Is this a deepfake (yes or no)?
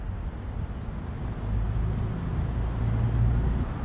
no